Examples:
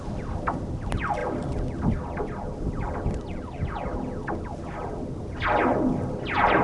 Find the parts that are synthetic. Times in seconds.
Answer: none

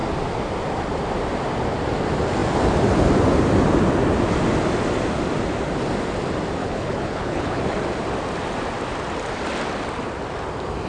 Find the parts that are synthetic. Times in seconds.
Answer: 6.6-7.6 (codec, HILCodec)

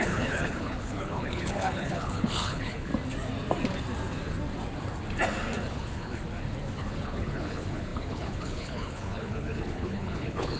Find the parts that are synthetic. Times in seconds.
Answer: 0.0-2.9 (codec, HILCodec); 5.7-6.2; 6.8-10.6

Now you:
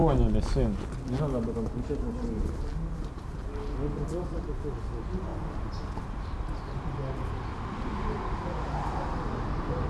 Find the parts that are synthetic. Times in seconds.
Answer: none

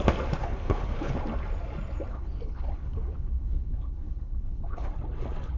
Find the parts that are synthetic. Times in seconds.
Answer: 0.4-1.1 (codec, HILCodec); 2.1-4.9